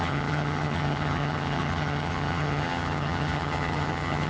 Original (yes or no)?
no